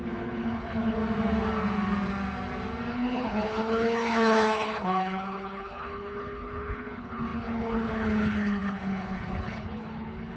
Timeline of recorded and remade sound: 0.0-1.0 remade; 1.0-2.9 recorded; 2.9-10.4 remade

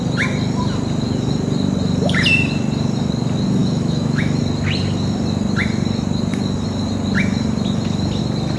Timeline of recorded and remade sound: 0.0-3.6 recorded; 3.6-4.4 remade; 4.4-8.6 recorded

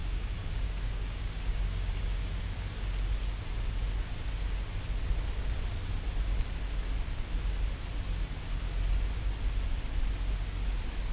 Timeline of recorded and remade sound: 0.0-2.4 remade; 2.4-11.1 recorded